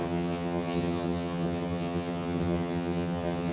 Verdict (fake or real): fake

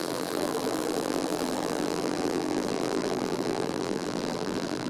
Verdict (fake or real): fake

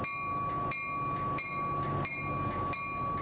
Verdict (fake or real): real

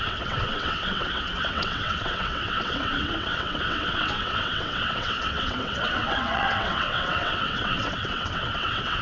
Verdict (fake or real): fake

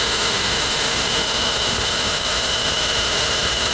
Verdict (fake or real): fake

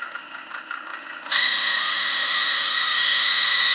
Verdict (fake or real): fake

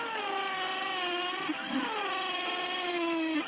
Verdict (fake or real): real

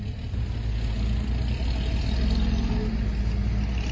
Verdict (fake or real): real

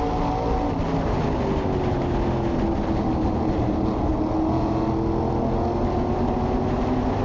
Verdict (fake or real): real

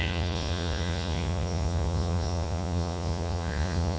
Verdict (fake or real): fake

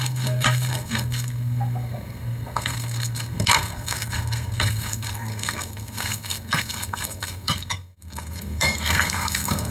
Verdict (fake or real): fake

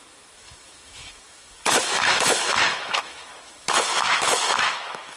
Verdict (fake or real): fake